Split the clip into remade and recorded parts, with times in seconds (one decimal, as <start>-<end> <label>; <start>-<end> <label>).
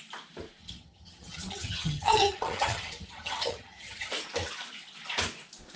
0.0-0.6 recorded; 0.6-4.1 remade; 4.1-5.8 recorded